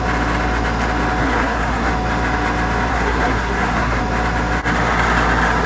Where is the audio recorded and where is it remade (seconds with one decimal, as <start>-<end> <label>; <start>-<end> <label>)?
0.0-1.2 recorded; 1.2-1.9 remade; 1.9-2.9 recorded; 2.9-4.0 remade; 4.0-5.7 recorded